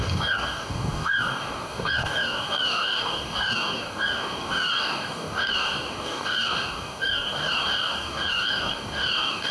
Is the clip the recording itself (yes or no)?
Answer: no